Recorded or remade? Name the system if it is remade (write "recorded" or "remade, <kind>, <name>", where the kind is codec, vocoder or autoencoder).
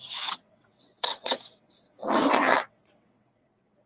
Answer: remade, vocoder, WaveNeXt